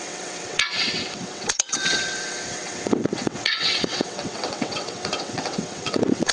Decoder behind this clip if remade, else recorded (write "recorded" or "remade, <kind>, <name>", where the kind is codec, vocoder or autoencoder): remade, vocoder, WaveNeXt